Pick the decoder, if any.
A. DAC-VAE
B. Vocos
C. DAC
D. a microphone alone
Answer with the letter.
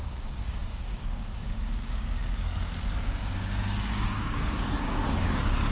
C